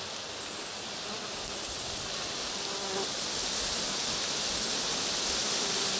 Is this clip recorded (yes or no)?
yes